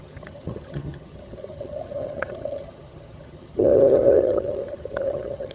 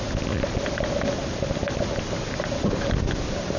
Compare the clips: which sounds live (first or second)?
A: second